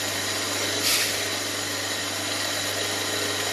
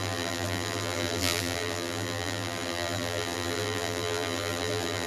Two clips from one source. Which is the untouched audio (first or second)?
first